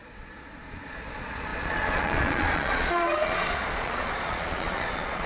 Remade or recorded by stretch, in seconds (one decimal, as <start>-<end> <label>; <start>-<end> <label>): 0.0-5.3 remade